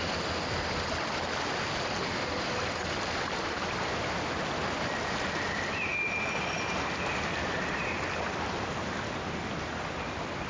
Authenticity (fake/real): real